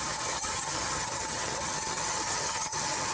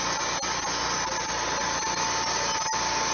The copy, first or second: first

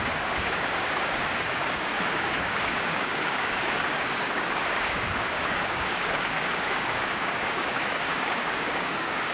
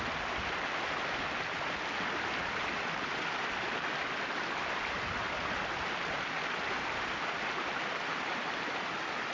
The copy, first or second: first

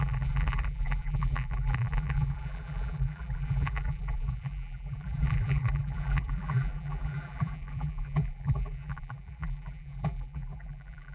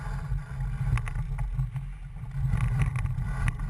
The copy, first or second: first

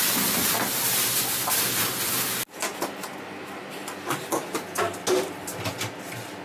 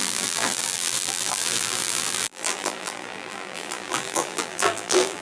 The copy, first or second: second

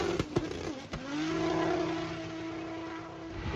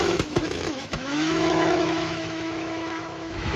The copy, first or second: second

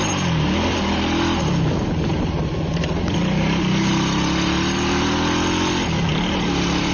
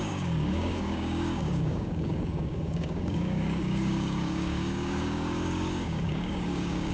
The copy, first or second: second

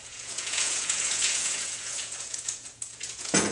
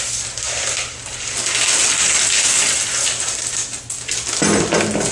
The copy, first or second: first